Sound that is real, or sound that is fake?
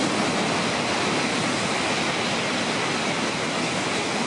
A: real